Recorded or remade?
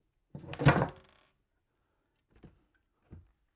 recorded